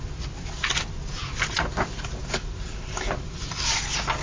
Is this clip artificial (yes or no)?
no